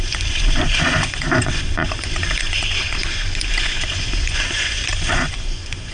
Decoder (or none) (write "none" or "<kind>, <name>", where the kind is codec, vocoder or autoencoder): vocoder, Vocos